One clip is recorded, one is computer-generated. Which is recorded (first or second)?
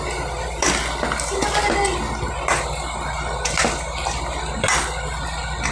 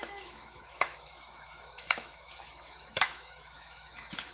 first